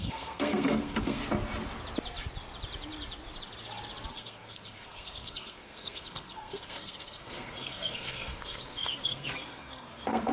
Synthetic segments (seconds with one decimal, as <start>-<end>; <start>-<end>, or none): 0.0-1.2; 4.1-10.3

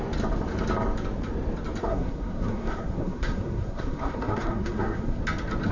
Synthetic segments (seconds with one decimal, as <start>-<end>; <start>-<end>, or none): 1.8-5.2

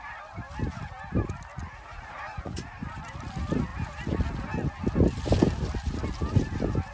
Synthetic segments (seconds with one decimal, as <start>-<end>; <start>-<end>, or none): 1.6-2.8